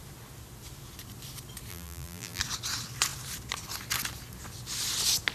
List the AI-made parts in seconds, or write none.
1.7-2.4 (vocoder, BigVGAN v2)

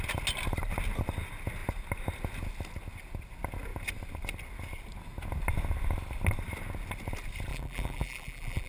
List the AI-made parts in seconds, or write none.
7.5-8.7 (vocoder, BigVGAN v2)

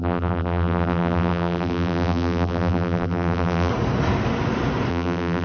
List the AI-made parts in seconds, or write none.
0.0-3.7 (vocoder, BigVGAN v2); 4.9-5.4

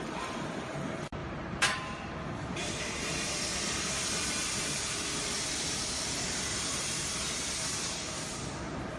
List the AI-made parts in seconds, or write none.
1.2-2.1 (vocoder, BigVGAN v2); 2.6-7.2